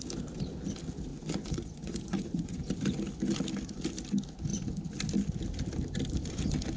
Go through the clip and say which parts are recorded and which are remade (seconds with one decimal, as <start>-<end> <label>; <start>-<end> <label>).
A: 0.0-1.1 recorded; 1.1-2.6 remade; 2.6-6.8 recorded